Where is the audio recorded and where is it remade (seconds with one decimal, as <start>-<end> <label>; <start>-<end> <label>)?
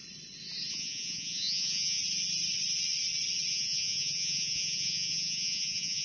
0.0-0.7 recorded; 0.7-2.0 remade; 2.0-3.5 recorded; 3.5-6.0 remade